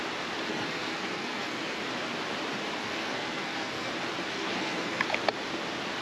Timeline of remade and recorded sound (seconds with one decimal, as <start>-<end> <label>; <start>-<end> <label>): 0.0-0.5 recorded; 0.5-1.8 remade; 1.8-2.8 recorded; 2.8-3.9 remade; 3.9-4.3 recorded; 4.3-5.0 remade; 5.0-6.0 recorded